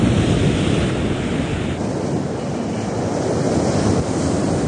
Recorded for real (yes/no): yes